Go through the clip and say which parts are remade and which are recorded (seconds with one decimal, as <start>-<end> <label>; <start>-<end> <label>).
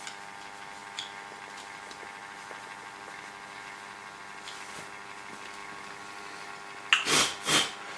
0.0-8.0 recorded